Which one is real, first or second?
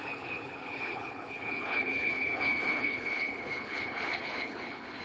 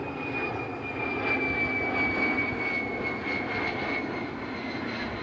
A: second